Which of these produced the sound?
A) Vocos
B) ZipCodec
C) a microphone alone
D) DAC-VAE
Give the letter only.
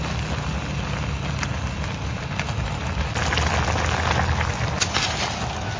C